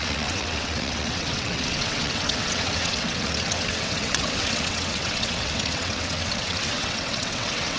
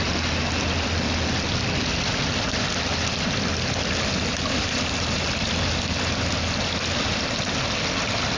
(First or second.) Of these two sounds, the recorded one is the second